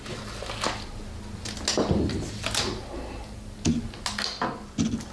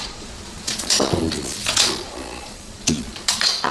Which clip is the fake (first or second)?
second